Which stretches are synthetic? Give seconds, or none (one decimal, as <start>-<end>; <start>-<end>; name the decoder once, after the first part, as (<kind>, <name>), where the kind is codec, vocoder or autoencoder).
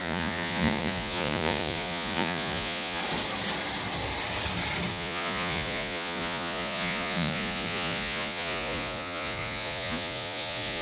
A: 0.0-3.0 (vocoder, Vocos); 4.9-10.8